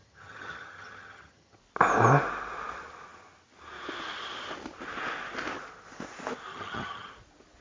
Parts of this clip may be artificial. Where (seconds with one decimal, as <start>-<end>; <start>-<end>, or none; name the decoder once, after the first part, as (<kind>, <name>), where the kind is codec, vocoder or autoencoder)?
0.0-1.6 (vocoder, HiFi-GAN); 6.5-7.1